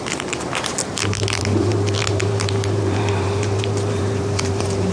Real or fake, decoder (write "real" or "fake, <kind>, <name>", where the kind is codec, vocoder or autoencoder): fake, vocoder, BigVGAN v2